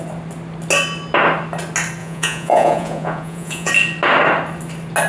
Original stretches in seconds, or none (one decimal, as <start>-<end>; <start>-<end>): 0.0-2.0; 3.7-5.1